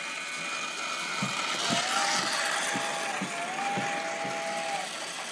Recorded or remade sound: recorded